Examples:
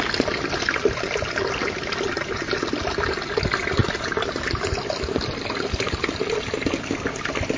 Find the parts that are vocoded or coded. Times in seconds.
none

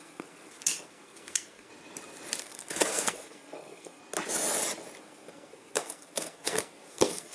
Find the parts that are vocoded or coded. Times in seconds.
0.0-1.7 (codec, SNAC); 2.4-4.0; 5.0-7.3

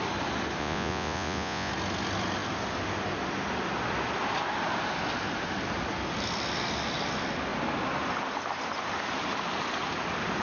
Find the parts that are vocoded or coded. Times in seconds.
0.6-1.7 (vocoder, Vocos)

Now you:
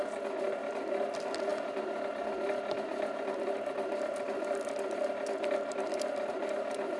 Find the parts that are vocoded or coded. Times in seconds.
none

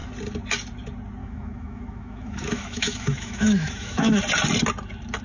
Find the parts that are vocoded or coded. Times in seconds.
1.2-4.2 (autoencoder, DAC-VAE)

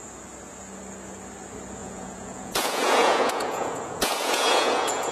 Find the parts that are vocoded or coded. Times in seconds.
1.8-5.1 (vocoder, Vocos)